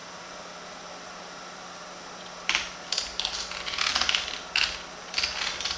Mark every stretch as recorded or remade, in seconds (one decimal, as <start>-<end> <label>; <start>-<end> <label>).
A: 0.0-5.8 recorded